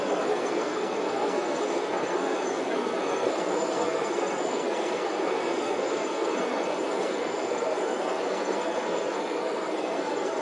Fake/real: fake